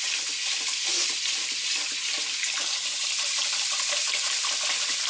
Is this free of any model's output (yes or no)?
yes